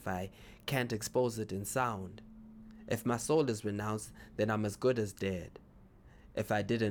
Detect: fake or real real